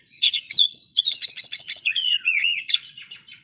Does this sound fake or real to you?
fake